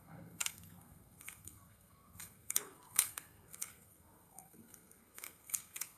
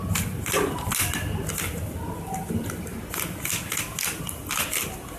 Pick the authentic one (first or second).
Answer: second